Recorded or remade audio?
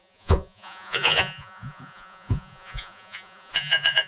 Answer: remade